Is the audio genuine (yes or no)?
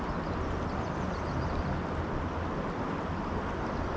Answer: yes